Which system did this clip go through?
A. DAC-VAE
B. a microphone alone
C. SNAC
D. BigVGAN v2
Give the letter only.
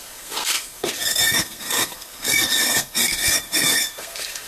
C